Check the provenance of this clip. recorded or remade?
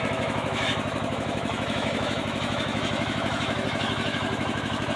remade